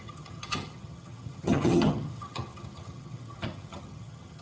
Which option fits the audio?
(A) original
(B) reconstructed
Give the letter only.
B